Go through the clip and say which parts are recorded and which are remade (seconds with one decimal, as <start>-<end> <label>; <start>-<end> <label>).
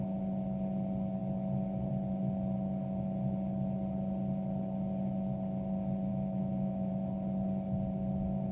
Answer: 0.0-6.1 recorded; 6.1-6.9 remade; 6.9-8.5 recorded